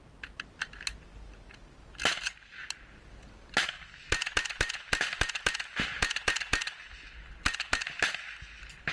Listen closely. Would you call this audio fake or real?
real